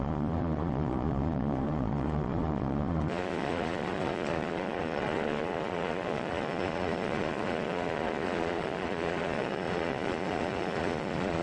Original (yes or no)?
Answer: no